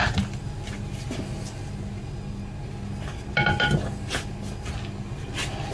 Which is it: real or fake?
real